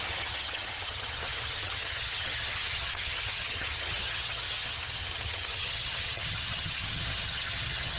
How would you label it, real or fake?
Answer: fake